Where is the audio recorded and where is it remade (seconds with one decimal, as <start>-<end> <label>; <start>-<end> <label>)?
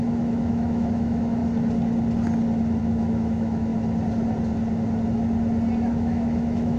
0.0-1.4 remade; 1.4-2.8 recorded; 2.8-3.7 remade; 3.7-5.9 recorded; 5.9-6.8 remade